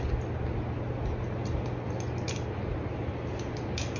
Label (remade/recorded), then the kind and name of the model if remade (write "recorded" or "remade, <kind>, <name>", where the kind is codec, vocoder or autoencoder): recorded